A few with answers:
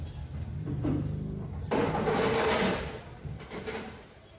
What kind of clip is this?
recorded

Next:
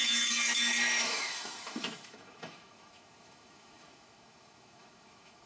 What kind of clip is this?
remade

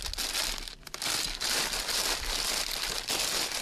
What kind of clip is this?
recorded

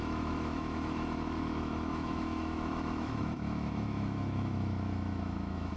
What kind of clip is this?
remade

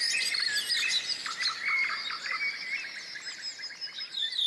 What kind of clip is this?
recorded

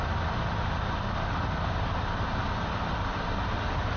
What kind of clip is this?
recorded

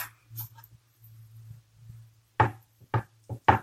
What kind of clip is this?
recorded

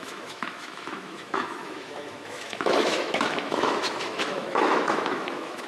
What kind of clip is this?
remade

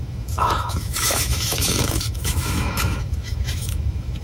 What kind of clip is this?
remade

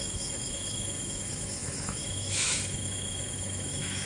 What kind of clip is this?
remade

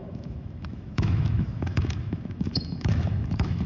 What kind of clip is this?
remade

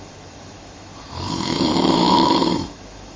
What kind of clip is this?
remade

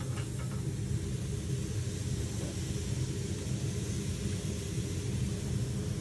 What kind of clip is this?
recorded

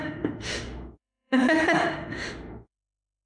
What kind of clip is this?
remade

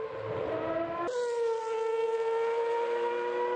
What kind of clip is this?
recorded